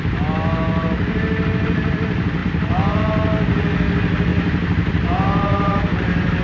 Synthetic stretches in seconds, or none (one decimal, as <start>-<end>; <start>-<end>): 4.3-6.4